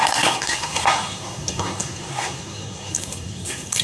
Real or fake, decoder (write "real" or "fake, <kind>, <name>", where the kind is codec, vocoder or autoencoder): fake, codec, SNAC